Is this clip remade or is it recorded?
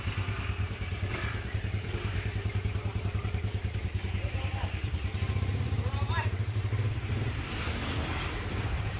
remade